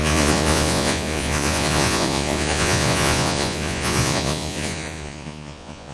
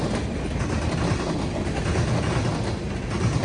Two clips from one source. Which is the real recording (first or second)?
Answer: second